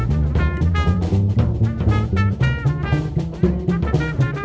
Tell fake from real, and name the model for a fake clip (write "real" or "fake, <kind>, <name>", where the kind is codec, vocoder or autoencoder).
fake, vocoder, BigVGAN v2